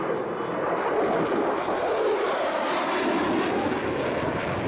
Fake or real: real